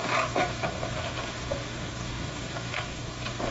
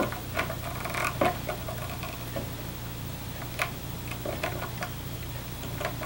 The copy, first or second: first